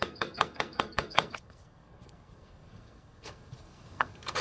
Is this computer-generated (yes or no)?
yes